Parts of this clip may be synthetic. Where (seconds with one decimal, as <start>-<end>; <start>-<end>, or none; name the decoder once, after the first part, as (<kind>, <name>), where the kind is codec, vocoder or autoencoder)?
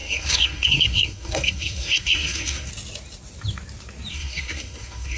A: 0.0-2.7 (codec, SNAC); 4.1-5.2